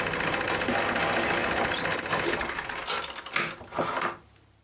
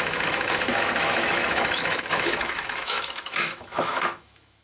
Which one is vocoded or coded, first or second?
second